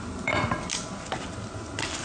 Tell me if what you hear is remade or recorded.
recorded